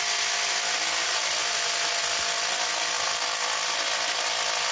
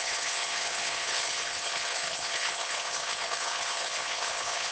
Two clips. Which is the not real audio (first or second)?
second